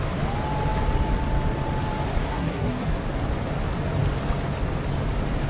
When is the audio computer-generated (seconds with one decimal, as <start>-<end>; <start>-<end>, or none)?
2.3-2.9